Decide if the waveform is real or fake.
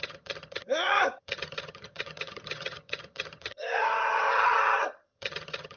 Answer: fake